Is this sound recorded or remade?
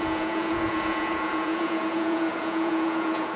remade